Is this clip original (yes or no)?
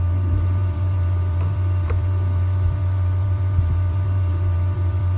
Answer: no